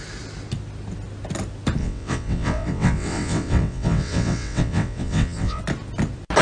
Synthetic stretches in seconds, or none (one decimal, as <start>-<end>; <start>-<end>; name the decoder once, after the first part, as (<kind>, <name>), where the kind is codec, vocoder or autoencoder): 1.8-5.6 (vocoder, WaveNeXt)